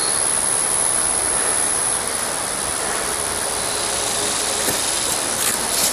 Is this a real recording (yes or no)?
no